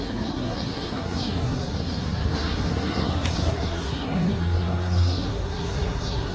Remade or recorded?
remade